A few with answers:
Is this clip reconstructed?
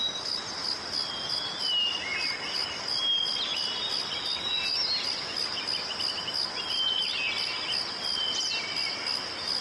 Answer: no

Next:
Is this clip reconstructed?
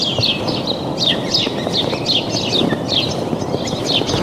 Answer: no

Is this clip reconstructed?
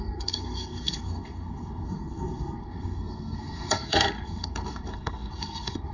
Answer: yes